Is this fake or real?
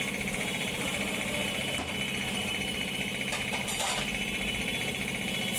fake